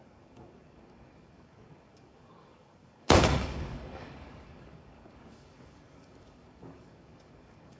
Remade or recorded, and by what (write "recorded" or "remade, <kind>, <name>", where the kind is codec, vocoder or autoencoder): remade, codec, DAC